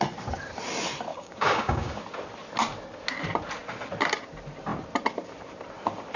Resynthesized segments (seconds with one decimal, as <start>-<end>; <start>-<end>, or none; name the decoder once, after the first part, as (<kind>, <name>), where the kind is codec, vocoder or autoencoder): 1.1-2.0 (codec, DAC)